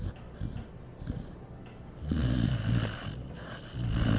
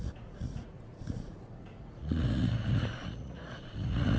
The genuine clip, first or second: first